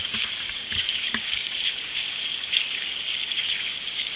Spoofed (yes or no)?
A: yes